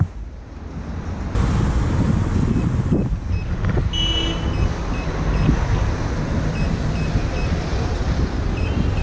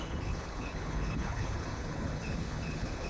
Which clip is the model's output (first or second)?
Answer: second